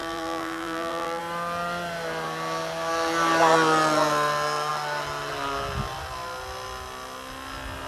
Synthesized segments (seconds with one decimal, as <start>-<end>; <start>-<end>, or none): 0.0-1.2